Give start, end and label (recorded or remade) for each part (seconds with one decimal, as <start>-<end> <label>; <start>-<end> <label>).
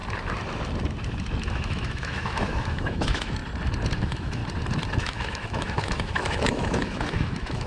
0.0-1.5 recorded; 1.5-3.4 remade; 3.4-4.0 recorded; 4.0-4.4 remade; 4.4-5.0 recorded; 5.0-7.7 remade